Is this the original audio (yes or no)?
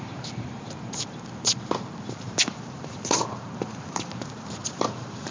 no